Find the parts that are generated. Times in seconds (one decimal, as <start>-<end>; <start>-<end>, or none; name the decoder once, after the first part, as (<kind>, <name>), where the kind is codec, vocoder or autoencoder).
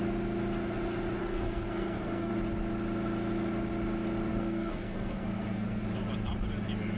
1.2-2.3 (codec, SNAC); 4.3-5.8